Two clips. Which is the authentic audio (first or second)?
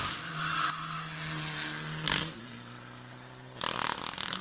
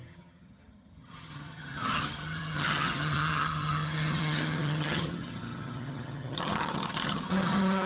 first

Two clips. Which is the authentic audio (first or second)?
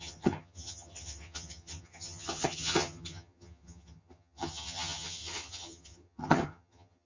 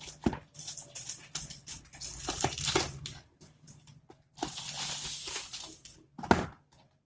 second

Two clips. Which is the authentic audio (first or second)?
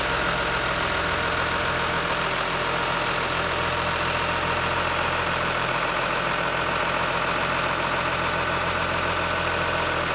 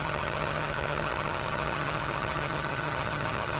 first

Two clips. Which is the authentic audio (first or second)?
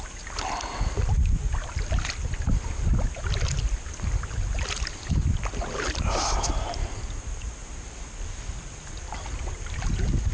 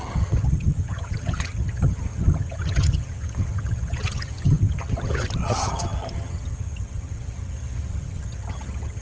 first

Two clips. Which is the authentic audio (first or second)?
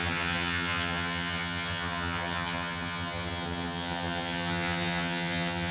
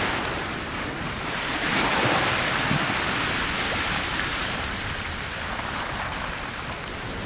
second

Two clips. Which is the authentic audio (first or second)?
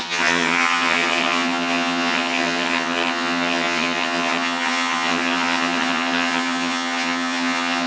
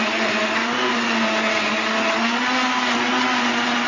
second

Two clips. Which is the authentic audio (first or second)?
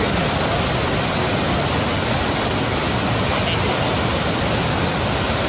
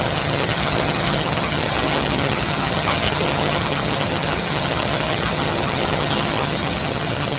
first